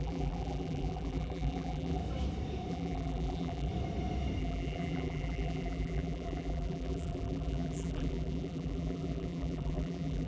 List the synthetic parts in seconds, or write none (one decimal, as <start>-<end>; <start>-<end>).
0.0-2.0; 2.7-3.7; 4.4-10.3